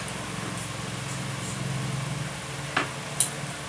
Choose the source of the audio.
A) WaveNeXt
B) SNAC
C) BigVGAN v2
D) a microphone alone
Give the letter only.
D